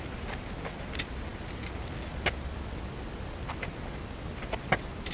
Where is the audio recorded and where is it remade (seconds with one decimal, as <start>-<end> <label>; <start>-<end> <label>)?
0.0-5.1 recorded